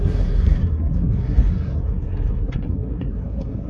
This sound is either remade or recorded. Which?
remade